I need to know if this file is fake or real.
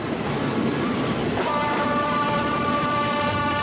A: fake